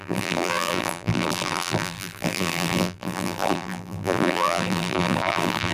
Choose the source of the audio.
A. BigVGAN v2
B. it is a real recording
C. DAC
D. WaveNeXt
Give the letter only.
A